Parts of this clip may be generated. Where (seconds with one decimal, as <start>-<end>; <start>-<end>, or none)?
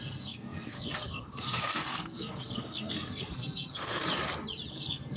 0.0-4.0; 4.7-5.2